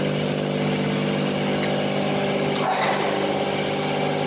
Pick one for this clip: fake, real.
real